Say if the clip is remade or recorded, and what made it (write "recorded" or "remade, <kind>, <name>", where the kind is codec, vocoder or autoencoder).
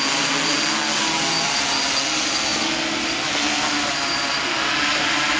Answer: recorded